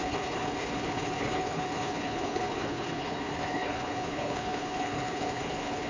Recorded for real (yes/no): no